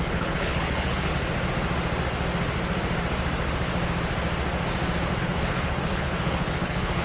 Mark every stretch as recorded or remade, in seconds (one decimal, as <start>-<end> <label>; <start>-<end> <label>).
0.0-1.1 remade; 1.1-5.2 recorded; 5.2-7.0 remade